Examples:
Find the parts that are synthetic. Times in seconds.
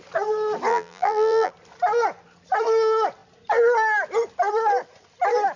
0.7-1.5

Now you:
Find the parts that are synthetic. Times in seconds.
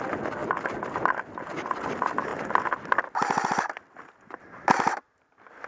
none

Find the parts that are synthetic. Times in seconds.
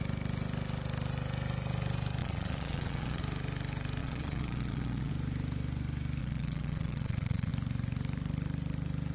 2.2-3.2; 4.0-5.1; 6.2-7.5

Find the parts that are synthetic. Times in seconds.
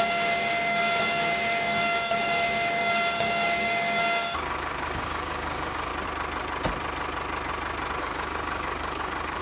0.0-5.9; 8.0-9.4